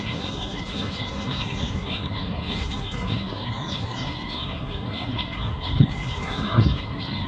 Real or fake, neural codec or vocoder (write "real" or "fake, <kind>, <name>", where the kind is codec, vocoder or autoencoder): fake, codec, SNAC